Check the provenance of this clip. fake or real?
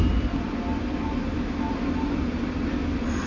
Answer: fake